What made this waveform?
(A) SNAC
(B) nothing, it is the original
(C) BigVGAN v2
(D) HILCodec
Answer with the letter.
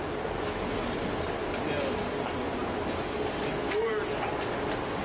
B